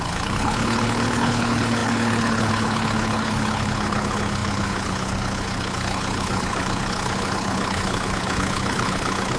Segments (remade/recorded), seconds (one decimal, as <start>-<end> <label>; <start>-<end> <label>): 0.0-9.4 remade

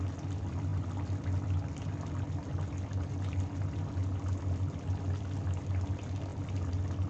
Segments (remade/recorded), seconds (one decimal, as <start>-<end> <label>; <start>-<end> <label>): 0.0-7.1 recorded

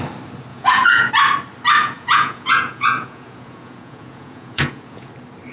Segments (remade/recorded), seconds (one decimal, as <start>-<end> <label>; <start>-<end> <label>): 0.0-0.5 recorded; 0.5-1.1 remade; 1.1-1.8 recorded; 1.8-5.1 remade; 5.1-5.5 recorded

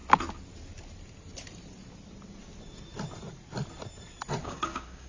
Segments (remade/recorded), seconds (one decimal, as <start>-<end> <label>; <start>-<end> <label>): 0.0-4.4 recorded; 4.4-5.1 remade

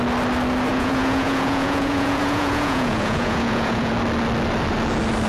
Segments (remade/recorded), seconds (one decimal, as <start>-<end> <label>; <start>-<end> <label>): 0.0-0.7 recorded; 0.7-3.9 remade; 3.9-5.3 recorded

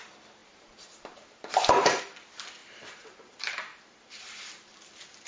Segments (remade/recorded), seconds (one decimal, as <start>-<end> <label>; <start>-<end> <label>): 0.0-0.4 recorded; 0.4-2.0 remade; 2.0-2.6 recorded; 2.6-3.3 remade; 3.3-3.7 recorded; 3.7-4.7 remade; 4.7-5.3 recorded

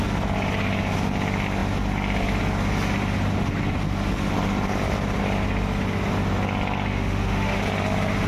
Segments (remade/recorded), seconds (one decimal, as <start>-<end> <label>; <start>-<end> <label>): 0.0-6.9 recorded; 6.9-7.6 remade; 7.6-8.3 recorded

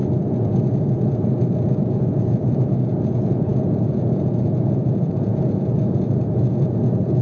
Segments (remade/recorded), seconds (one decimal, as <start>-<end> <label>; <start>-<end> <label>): 0.0-1.6 recorded; 1.6-7.2 remade